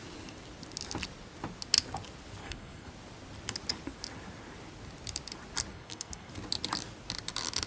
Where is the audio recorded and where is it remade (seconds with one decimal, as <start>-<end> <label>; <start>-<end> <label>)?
0.0-2.4 recorded; 2.4-2.9 remade; 2.9-5.7 recorded; 5.7-6.3 remade; 6.3-7.7 recorded